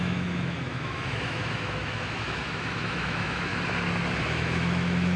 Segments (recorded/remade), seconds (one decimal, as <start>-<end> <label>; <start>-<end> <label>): 0.0-3.5 remade; 3.5-4.2 recorded; 4.2-5.2 remade